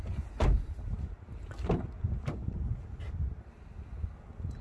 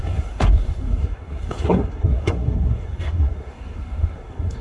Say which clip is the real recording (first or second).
first